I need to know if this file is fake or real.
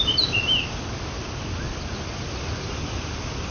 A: real